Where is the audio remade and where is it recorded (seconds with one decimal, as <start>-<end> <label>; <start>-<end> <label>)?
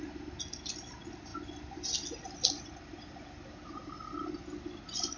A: 0.0-1.3 recorded; 1.3-4.4 remade; 4.4-5.2 recorded